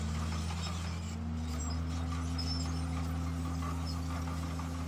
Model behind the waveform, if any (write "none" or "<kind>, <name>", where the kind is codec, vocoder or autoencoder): none